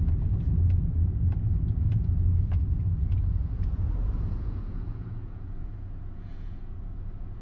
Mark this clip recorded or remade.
remade